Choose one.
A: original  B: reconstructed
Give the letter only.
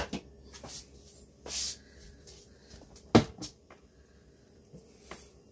A